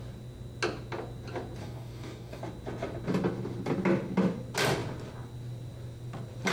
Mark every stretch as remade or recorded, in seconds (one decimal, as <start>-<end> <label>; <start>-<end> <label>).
0.0-1.6 recorded; 1.6-2.4 remade; 2.4-6.5 recorded